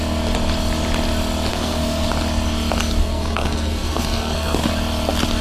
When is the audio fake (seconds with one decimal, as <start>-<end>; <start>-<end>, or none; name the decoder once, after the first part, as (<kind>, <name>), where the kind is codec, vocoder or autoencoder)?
1.5-2.1 (codec, SNAC); 3.0-4.7